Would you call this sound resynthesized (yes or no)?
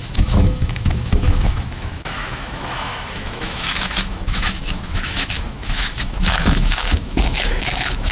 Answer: yes